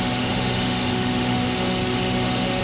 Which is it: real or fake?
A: fake